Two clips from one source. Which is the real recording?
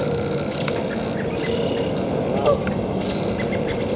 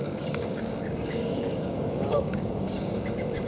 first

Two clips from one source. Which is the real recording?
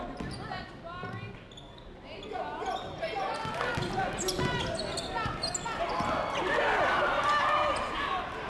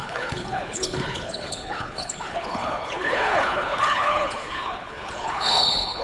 first